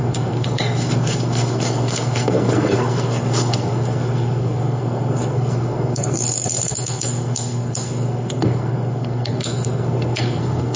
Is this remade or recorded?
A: remade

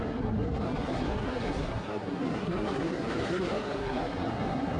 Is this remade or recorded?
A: remade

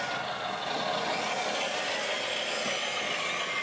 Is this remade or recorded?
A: recorded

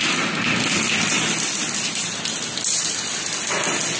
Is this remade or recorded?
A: recorded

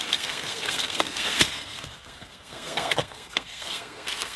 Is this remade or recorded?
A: remade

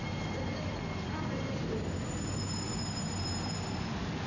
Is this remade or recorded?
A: recorded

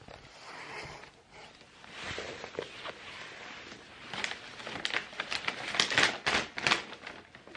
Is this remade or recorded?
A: recorded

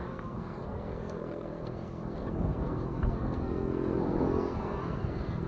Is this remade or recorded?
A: remade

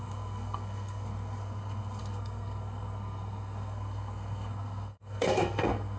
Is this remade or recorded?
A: remade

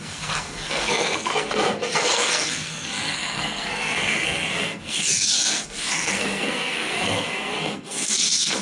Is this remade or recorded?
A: remade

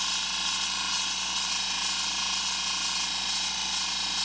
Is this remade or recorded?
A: recorded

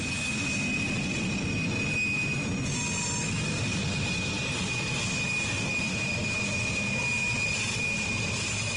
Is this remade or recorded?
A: recorded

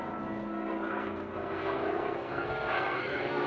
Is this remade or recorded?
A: remade